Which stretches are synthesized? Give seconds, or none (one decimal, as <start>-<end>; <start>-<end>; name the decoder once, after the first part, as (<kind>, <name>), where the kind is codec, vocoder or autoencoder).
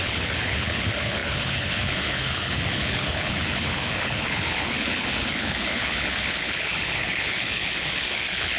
0.0-8.6 (codec, HILCodec)